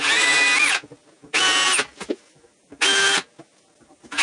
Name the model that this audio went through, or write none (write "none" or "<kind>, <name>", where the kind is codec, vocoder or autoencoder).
none